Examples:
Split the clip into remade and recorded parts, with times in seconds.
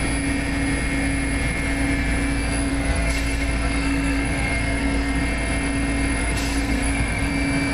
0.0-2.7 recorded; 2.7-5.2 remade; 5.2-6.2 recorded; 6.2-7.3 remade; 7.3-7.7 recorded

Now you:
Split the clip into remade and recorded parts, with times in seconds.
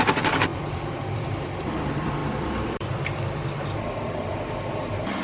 0.0-5.2 remade